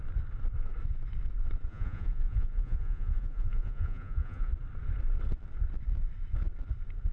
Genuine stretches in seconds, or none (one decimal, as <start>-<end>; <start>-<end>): 0.0-1.7; 4.5-7.1